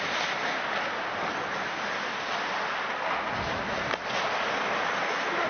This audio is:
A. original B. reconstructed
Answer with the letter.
A